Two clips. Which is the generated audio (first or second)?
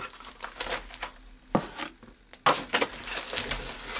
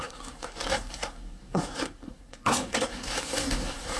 second